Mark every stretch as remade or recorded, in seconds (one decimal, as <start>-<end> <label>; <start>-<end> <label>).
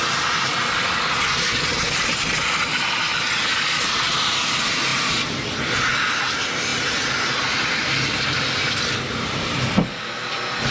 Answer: 0.0-10.7 recorded